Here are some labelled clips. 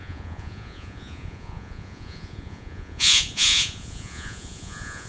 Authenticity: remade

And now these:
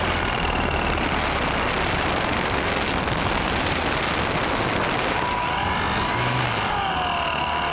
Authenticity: recorded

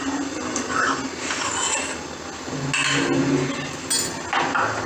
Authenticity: recorded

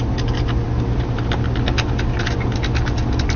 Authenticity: recorded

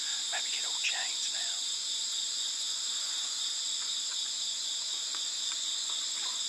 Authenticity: remade